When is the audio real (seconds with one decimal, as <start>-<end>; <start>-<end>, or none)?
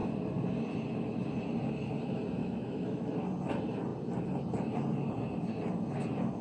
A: 0.0-2.4; 3.1-6.4